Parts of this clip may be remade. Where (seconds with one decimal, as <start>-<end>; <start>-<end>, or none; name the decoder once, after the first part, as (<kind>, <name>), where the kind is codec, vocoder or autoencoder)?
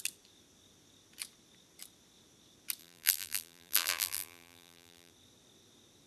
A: 2.8-5.1 (vocoder, BigVGAN v2)